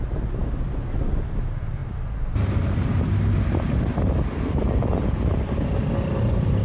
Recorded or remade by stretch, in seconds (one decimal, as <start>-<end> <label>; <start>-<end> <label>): 0.0-6.6 recorded